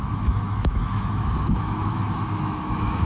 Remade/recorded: remade